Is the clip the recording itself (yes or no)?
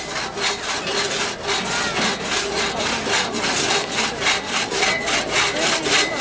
yes